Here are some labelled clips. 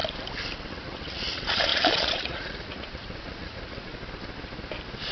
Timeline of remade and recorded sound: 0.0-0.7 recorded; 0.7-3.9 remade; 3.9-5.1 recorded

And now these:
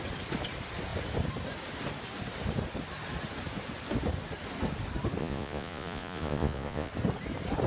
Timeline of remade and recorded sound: 0.0-5.2 recorded; 5.2-6.9 remade; 6.9-7.7 recorded

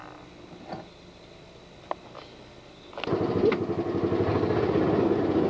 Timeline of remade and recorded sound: 0.0-5.5 recorded

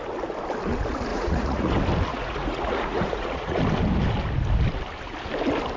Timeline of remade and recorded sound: 0.0-1.1 recorded; 1.1-1.7 remade; 1.7-2.1 recorded; 2.1-3.6 remade; 3.6-5.8 recorded

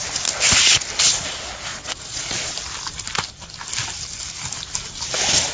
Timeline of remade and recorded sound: 0.0-1.7 recorded; 1.7-2.5 remade; 2.5-5.5 recorded

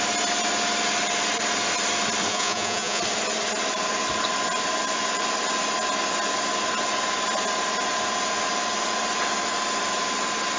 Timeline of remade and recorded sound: 0.0-2.3 recorded; 2.3-3.0 remade; 3.0-10.6 recorded